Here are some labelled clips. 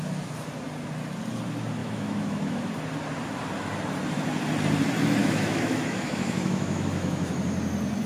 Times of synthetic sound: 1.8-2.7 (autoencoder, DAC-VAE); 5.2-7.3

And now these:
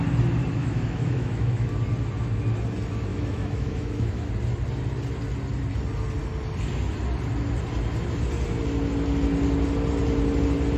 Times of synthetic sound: 0.6-1.7 (autoencoder, DAC-VAE); 3.1-4.3

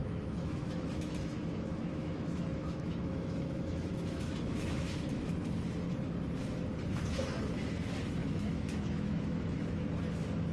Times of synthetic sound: 0.0-5.3 (autoencoder, DAC-VAE); 8.2-9.8

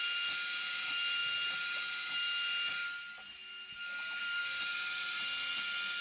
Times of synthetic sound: none

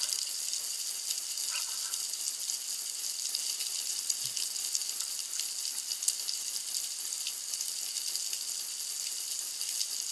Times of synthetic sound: none